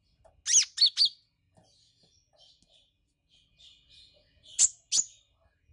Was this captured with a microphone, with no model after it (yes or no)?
yes